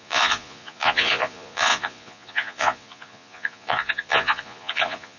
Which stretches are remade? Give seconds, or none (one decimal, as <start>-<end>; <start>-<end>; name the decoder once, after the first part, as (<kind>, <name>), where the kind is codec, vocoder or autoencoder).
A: 0.0-5.2 (vocoder, Vocos)